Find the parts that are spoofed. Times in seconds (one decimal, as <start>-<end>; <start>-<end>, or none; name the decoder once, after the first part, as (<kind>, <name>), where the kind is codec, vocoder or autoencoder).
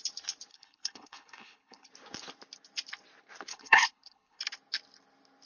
0.5-1.9 (codec, HILCodec); 3.5-4.4